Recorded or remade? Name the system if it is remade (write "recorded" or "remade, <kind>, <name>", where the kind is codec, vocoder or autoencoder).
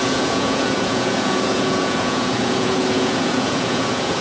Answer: remade, vocoder, Vocos